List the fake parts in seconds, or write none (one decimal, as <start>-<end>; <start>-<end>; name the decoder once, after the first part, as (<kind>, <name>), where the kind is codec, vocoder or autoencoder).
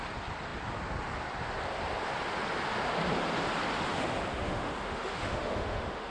4.3-6.1 (autoencoder, DAC-VAE)